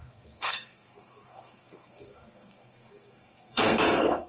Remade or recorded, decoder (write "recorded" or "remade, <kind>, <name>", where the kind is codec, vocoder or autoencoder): remade, codec, SNAC